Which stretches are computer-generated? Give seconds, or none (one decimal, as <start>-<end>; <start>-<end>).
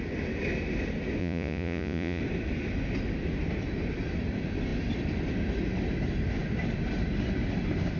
1.2-2.2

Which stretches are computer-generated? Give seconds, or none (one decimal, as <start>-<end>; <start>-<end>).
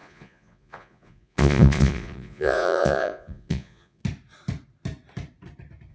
0.0-4.0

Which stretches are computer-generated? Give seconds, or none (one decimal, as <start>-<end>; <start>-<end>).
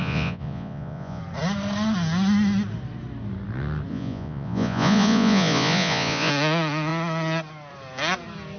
0.0-1.2; 3.9-6.3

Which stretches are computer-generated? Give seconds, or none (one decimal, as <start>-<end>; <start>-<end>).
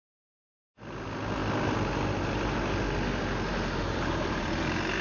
none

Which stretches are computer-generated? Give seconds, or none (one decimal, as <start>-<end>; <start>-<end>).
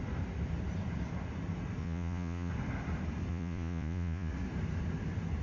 1.8-2.5; 3.3-4.3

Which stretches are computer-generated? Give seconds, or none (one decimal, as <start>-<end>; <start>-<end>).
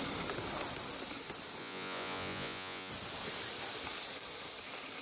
1.6-2.9